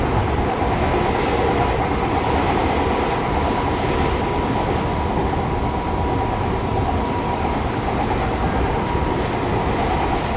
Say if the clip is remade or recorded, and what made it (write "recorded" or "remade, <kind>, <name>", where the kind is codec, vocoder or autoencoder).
recorded